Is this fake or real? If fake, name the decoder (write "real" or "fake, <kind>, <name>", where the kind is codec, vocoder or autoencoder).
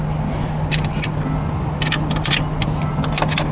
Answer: real